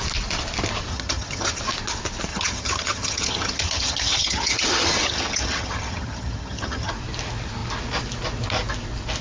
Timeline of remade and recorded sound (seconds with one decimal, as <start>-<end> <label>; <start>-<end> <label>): 0.0-0.9 recorded; 0.9-1.6 remade; 1.6-2.3 recorded; 2.3-6.9 remade; 6.9-9.2 recorded